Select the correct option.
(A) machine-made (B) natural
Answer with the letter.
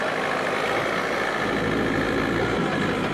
B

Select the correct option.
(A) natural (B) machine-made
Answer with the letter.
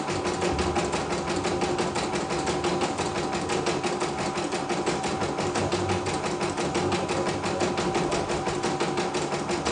A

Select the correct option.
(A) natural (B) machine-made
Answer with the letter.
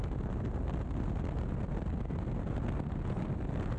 A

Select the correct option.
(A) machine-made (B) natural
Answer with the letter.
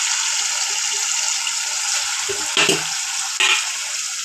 B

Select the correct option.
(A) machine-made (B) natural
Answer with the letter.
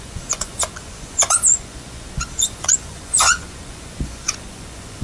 A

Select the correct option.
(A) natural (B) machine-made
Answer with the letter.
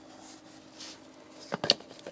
A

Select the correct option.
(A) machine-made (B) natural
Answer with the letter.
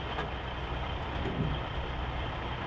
B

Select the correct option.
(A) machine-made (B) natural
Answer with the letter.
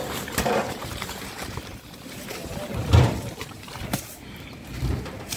A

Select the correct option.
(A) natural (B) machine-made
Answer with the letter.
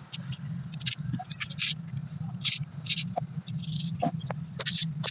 A